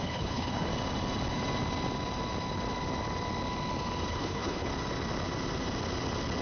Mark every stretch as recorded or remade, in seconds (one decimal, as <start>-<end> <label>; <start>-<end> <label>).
0.0-0.7 remade; 0.7-4.1 recorded; 4.1-4.7 remade; 4.7-6.4 recorded